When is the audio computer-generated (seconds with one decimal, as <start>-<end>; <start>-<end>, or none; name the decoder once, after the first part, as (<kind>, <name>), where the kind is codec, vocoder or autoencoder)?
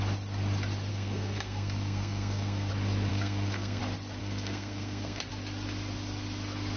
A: 0.9-2.7 (codec, SNAC); 3.1-3.8; 4.2-5.3